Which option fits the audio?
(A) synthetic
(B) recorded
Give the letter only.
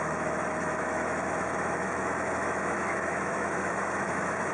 A